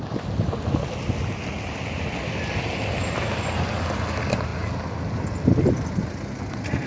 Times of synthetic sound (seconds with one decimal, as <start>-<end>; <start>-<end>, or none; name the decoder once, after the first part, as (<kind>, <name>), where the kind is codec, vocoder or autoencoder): none